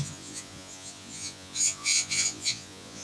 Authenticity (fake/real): fake